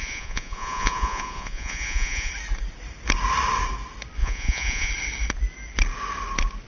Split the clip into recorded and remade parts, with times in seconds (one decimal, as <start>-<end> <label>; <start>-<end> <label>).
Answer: 0.0-2.3 remade; 2.3-4.2 recorded; 4.2-4.9 remade; 4.9-6.7 recorded